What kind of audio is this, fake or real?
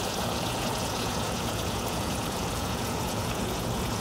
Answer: fake